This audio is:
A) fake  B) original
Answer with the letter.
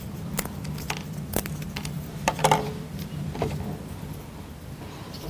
A